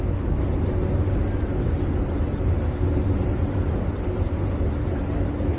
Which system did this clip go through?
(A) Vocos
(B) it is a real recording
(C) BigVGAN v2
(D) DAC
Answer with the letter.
B